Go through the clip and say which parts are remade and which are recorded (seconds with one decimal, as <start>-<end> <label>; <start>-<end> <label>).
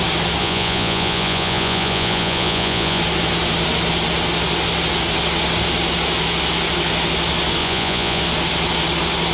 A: 0.0-0.4 recorded; 0.4-3.0 remade; 3.0-7.6 recorded; 7.6-8.2 remade; 8.2-9.3 recorded